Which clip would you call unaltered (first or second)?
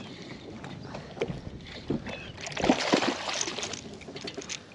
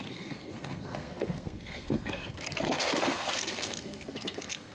first